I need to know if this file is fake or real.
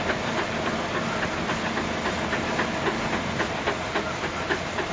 real